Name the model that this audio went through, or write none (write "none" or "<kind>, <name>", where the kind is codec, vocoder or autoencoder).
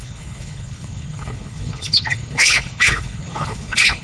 codec, HILCodec